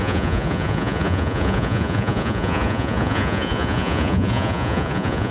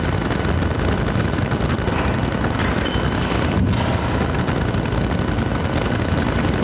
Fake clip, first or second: first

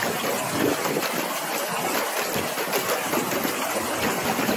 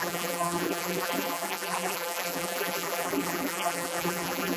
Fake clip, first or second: second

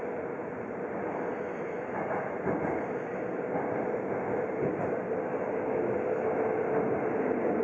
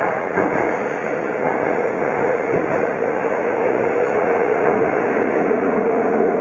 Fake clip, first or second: second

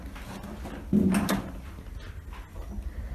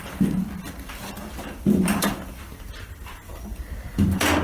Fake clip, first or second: second